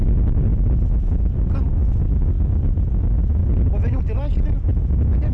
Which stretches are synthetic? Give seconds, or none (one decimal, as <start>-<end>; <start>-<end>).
none